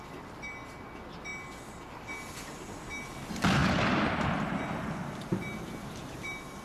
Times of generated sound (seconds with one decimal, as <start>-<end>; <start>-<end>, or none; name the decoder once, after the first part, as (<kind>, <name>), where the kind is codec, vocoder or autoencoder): 5.3-6.6 (vocoder, BigVGAN v2)